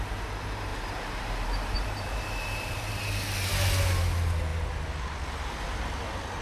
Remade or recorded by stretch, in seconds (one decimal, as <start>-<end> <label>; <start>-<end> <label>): 0.0-0.7 recorded; 0.7-3.0 remade; 3.0-6.4 recorded